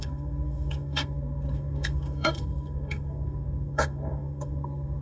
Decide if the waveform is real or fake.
fake